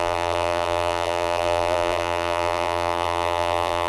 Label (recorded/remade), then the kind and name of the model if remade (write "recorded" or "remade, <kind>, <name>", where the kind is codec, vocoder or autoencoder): remade, vocoder, BigVGAN v2